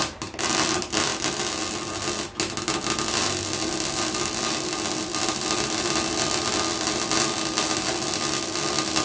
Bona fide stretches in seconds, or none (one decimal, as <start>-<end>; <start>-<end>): 0.0-9.0